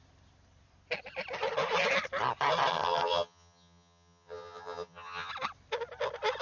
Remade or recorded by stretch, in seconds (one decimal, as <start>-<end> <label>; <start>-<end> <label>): 0.0-2.7 recorded; 2.7-5.3 remade; 5.3-6.4 recorded